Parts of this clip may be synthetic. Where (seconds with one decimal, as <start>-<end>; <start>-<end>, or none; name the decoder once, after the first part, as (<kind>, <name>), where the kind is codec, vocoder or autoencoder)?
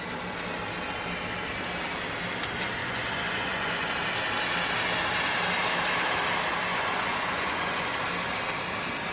2.8-3.9 (vocoder, Vocos); 6.7-7.9